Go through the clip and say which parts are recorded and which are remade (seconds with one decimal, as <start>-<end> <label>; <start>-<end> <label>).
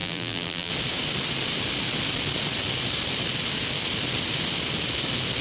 0.0-0.7 remade; 0.7-5.4 recorded